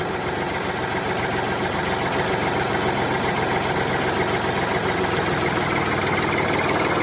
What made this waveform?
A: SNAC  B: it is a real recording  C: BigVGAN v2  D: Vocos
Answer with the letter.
B